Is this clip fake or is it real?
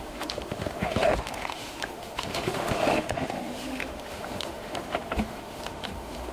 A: fake